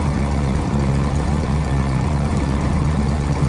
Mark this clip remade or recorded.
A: remade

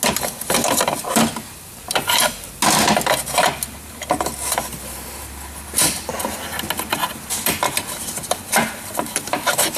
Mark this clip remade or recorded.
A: recorded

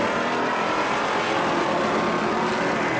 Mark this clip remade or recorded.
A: recorded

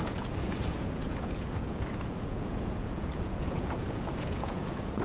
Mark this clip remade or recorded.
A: remade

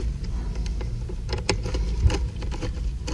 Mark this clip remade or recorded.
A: recorded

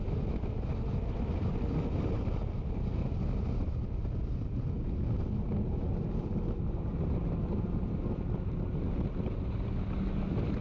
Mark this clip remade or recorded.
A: recorded